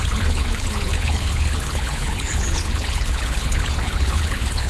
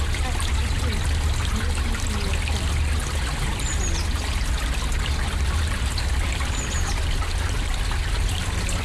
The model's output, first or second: first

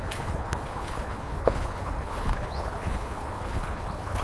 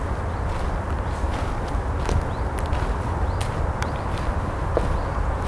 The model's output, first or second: first